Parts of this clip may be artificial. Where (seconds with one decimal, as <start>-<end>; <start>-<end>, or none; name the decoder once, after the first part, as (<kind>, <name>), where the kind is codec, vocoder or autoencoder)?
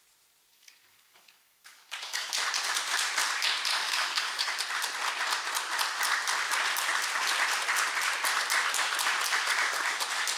0.5-2.3 (codec, DAC); 3.7-4.5